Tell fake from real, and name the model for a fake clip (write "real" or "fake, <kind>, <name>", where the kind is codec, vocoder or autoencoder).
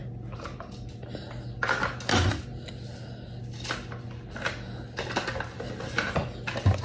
real